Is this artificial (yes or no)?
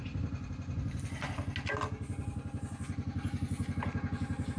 no